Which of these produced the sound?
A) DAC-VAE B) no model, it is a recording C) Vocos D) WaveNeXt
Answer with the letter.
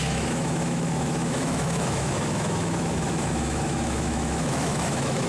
A